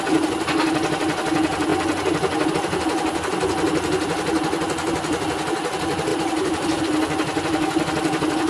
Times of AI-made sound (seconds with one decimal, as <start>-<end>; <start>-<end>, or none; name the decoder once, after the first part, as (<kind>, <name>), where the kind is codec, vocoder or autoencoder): none